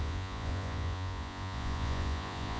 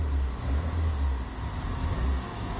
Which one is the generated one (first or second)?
first